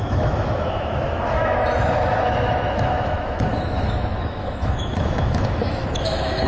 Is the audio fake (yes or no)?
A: yes